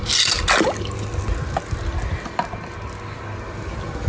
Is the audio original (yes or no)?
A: yes